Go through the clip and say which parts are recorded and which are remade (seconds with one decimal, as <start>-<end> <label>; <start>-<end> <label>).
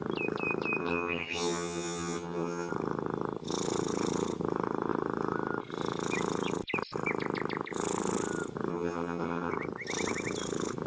0.0-0.8 recorded; 0.8-2.7 remade; 2.7-8.7 recorded; 8.7-9.5 remade; 9.5-10.9 recorded